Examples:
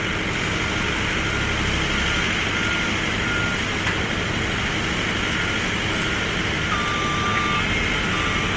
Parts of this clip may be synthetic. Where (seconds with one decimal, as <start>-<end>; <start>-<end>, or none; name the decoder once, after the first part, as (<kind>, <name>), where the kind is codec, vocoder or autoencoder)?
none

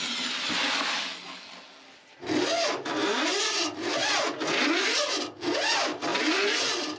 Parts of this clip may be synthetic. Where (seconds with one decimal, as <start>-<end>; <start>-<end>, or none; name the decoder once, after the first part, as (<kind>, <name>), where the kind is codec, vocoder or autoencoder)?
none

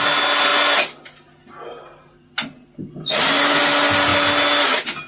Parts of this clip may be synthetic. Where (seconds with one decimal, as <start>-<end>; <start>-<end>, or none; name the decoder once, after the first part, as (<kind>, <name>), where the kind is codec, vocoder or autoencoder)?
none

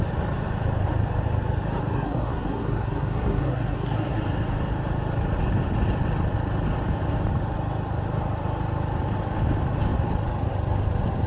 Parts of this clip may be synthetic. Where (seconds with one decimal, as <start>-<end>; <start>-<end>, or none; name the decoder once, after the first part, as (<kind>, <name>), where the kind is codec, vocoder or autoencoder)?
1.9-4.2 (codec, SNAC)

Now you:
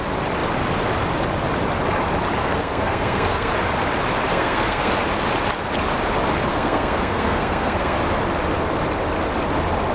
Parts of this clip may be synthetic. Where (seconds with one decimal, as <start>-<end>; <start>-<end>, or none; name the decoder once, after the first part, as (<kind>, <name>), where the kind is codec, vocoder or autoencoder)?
2.4-3.5 (codec, SNAC); 4.3-4.9; 6.5-8.0